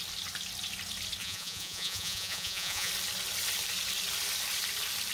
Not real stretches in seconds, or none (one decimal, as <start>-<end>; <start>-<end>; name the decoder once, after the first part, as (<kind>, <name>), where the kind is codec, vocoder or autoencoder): 1.2-2.9 (vocoder, Vocos)